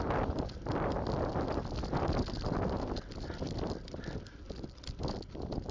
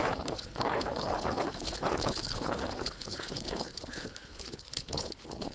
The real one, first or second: first